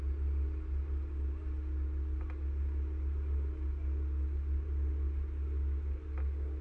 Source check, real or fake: real